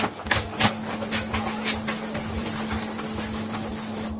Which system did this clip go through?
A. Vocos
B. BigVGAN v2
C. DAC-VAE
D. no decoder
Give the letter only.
D